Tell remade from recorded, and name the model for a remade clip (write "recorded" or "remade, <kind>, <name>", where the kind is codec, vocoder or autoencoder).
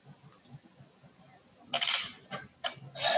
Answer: recorded